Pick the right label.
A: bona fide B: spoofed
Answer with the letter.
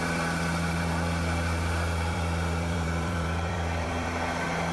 B